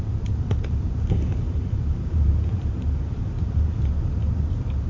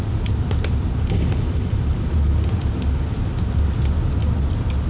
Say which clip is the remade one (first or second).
first